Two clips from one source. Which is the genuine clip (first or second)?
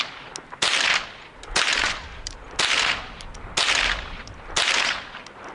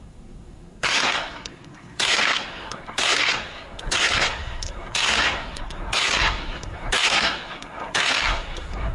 first